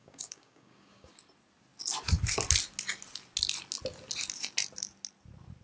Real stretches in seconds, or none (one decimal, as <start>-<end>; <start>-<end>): 1.1-5.6